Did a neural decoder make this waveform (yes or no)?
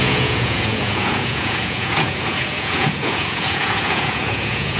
yes